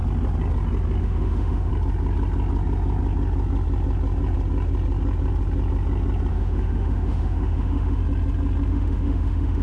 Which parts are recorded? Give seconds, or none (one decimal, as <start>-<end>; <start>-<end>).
0.0-1.0; 1.7-6.3; 8.0-8.7